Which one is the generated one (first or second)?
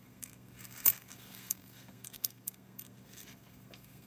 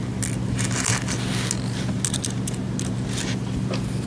first